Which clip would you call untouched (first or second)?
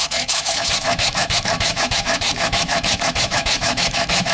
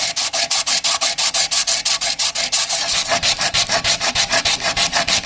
second